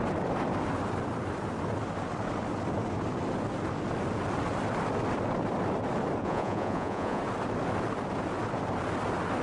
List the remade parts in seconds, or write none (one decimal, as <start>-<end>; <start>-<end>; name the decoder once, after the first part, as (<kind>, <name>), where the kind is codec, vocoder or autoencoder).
6.2-7.2 (vocoder, Vocos)